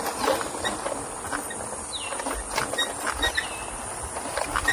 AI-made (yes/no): no